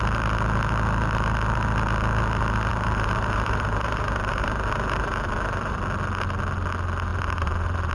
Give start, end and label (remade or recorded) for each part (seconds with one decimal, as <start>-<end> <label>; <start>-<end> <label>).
0.0-2.7 recorded; 2.7-5.8 remade; 5.8-7.1 recorded; 7.1-7.9 remade

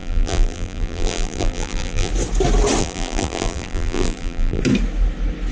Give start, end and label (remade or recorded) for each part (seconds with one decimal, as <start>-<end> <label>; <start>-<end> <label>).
0.0-2.1 remade; 2.1-2.8 recorded; 2.8-4.6 remade; 4.6-5.5 recorded

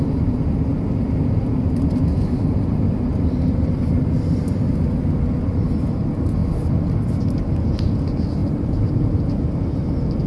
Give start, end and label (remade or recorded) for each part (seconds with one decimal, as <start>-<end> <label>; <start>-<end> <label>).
0.0-8.4 recorded; 8.4-9.4 remade; 9.4-10.3 recorded

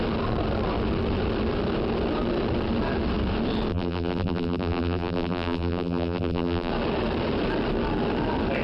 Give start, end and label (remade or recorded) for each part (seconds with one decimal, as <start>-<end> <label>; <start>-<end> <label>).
0.0-3.7 recorded; 3.7-6.7 remade; 6.7-8.6 recorded

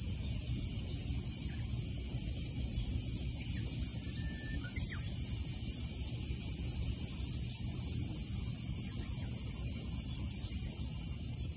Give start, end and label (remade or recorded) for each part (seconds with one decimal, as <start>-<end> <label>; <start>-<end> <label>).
0.0-11.6 recorded